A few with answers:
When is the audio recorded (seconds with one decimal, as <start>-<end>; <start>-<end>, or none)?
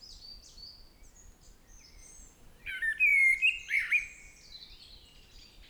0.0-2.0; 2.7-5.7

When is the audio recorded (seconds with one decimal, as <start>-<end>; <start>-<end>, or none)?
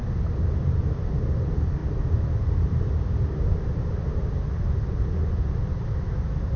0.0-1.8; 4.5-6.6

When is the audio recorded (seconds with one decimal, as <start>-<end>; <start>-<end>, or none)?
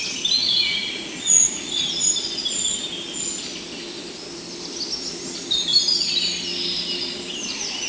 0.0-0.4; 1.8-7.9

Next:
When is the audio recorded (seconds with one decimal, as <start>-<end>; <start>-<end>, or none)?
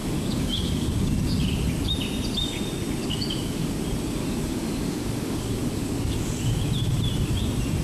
1.1-3.0; 3.8-4.2; 6.6-7.8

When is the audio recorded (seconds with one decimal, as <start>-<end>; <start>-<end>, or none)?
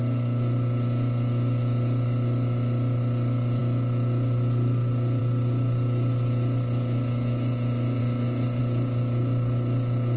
0.0-10.2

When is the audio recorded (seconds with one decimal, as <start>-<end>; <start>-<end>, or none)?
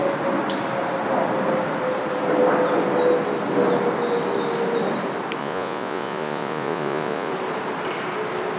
0.0-5.4; 7.3-8.6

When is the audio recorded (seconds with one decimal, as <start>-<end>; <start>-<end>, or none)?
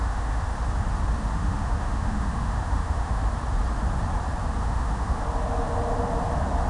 0.5-1.3; 3.2-4.6; 5.2-6.7